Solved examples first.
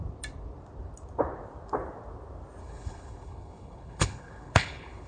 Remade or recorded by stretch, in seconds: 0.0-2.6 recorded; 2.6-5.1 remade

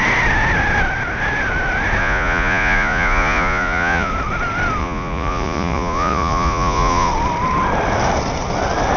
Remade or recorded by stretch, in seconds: 0.0-2.0 recorded; 2.0-4.1 remade; 4.1-4.8 recorded; 4.8-7.1 remade; 7.1-9.0 recorded

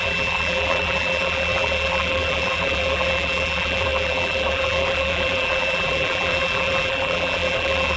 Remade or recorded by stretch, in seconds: 0.0-8.0 remade

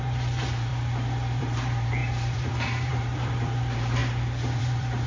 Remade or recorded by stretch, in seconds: 0.0-0.7 remade; 0.7-1.4 recorded; 1.4-4.0 remade; 4.0-4.6 recorded; 4.6-5.1 remade